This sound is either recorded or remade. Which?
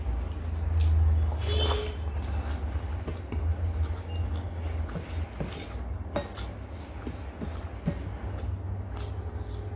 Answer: recorded